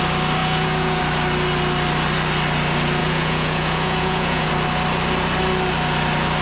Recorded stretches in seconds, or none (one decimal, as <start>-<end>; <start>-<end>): 0.0-0.4; 1.0-3.0; 4.5-6.4